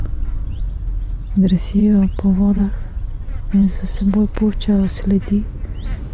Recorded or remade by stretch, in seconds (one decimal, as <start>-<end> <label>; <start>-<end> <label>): 0.0-0.6 remade; 0.6-1.8 recorded; 1.8-4.9 remade; 4.9-6.1 recorded